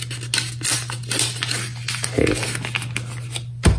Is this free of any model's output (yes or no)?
yes